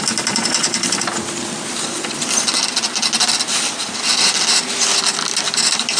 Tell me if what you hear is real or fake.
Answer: real